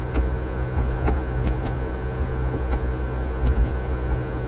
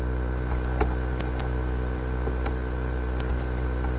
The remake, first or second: first